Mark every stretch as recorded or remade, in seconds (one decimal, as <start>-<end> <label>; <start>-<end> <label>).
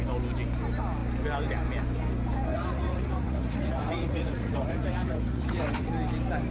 0.0-2.5 recorded; 2.5-5.9 remade; 5.9-6.5 recorded